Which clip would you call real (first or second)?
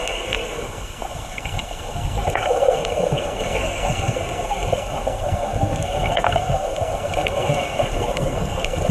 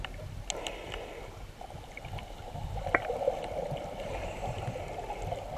second